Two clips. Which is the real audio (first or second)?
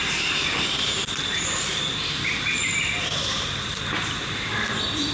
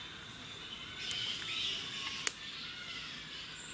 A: second